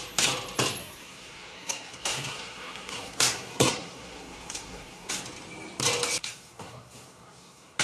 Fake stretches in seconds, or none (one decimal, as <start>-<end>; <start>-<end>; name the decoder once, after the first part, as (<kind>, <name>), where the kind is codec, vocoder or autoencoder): 0.8-5.1 (codec, SNAC); 6.2-7.8